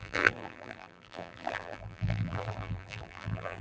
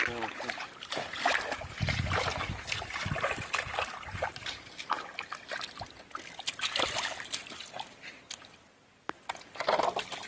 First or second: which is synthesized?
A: first